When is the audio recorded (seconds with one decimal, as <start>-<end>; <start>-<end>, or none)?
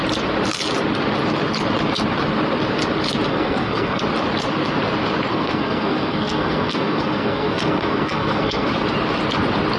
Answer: 0.0-3.3; 4.0-5.3; 8.7-9.8